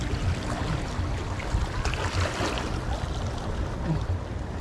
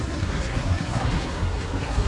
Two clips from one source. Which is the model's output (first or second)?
second